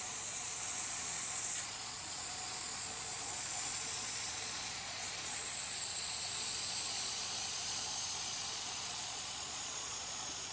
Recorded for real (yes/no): no